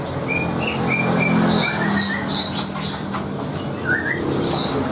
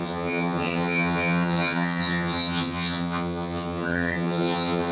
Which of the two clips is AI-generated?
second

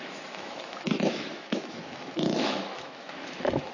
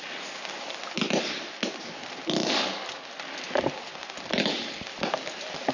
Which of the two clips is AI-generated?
first